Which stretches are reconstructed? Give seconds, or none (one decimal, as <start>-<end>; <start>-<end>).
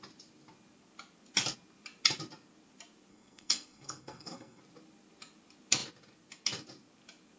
3.1-4.6